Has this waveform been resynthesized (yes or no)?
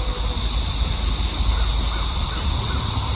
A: no